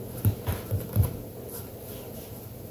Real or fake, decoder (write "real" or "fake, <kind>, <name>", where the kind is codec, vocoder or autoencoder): real